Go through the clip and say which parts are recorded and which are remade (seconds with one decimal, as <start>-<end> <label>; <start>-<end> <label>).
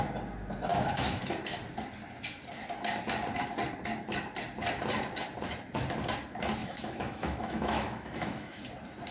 0.0-0.7 recorded; 0.7-1.2 remade; 1.2-6.6 recorded; 6.6-8.6 remade; 8.6-9.1 recorded